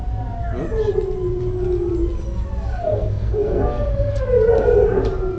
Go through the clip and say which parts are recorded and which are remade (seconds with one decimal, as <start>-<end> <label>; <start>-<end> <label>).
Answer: 0.0-2.7 recorded; 2.7-4.1 remade; 4.1-5.4 recorded